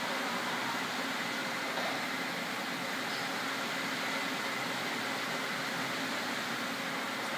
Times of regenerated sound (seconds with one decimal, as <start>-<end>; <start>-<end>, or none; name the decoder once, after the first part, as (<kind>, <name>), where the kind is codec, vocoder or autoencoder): 1.4-2.3 (vocoder, BigVGAN v2)